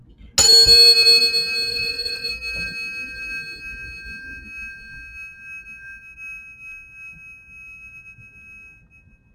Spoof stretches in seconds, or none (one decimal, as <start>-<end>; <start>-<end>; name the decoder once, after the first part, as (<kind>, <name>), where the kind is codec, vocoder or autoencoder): 1.7-2.3 (vocoder, Vocos)